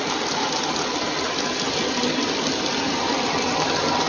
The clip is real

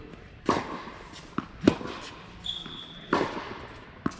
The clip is real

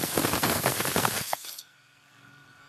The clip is fake